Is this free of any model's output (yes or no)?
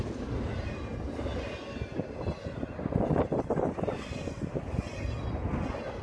yes